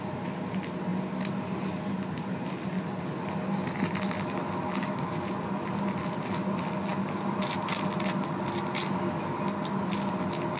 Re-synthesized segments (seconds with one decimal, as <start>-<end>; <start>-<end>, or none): 4.8-5.3